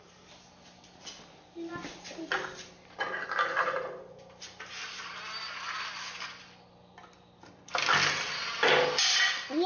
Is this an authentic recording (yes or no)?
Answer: yes